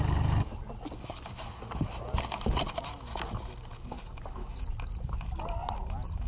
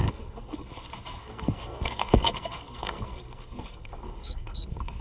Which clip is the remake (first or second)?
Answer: second